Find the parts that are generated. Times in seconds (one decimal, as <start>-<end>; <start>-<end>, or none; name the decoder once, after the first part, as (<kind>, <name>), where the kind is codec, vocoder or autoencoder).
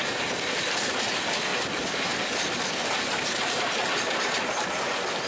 none